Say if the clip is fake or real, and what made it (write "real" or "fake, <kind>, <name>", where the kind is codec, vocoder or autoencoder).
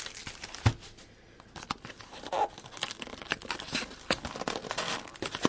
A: real